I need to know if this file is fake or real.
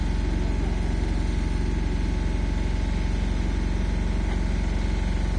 real